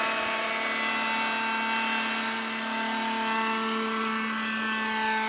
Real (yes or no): yes